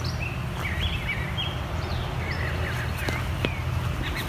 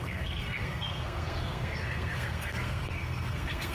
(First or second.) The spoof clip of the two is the second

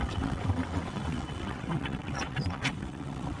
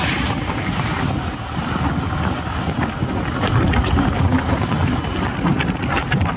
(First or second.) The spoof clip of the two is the first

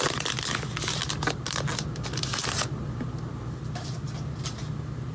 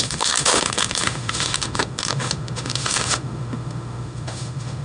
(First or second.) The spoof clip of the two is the second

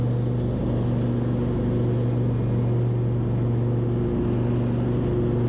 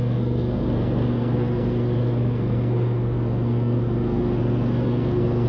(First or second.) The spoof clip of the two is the second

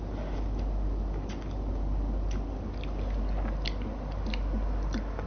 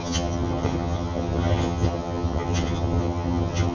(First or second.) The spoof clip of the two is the second